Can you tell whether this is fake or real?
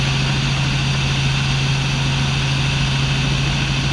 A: real